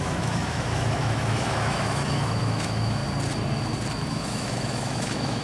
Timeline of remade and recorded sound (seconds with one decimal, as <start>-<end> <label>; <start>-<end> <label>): 0.0-3.0 remade; 3.0-4.1 recorded; 4.1-5.4 remade